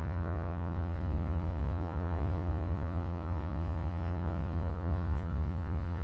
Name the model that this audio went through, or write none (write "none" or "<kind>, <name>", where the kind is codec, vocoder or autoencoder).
vocoder, Vocos